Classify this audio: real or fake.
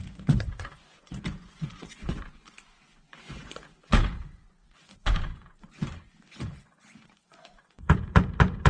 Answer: fake